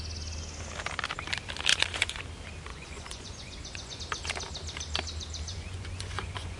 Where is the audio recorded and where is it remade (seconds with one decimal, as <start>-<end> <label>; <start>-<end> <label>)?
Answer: 0.0-1.7 recorded; 1.7-2.2 remade; 2.2-2.7 recorded; 2.7-4.0 remade; 4.0-5.5 recorded; 5.5-6.6 remade